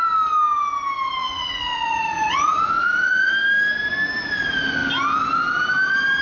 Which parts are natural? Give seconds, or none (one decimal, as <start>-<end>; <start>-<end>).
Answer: 0.0-1.2; 3.3-6.2